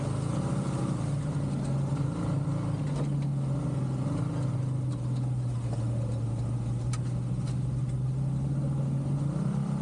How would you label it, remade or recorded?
recorded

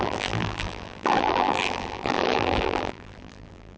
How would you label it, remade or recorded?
remade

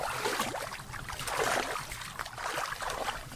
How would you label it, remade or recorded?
recorded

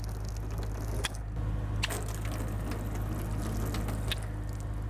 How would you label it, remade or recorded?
recorded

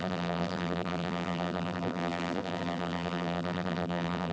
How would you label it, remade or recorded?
remade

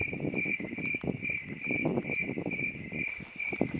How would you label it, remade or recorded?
recorded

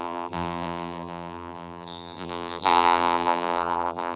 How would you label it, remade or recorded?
remade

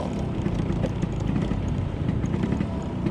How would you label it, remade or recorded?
remade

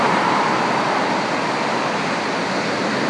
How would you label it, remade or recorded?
recorded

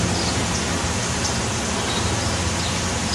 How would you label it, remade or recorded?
recorded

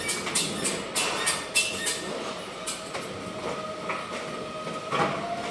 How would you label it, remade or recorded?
recorded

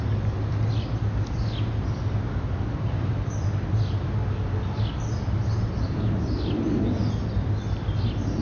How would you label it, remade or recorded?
recorded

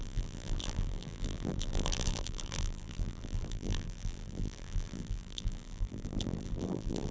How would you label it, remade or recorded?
remade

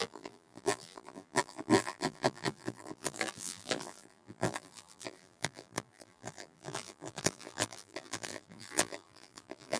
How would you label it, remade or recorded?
remade